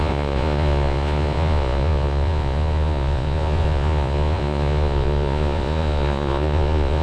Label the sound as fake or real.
fake